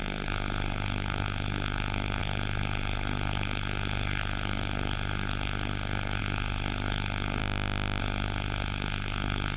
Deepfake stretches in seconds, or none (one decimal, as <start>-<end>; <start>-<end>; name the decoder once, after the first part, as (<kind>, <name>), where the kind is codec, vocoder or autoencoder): 0.0-7.4 (codec, SNAC); 8.0-9.6